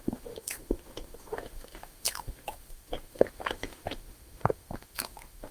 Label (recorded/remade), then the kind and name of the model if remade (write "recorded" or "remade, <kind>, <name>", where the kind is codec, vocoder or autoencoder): remade, autoencoder, DAC-VAE